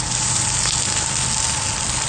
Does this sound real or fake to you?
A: real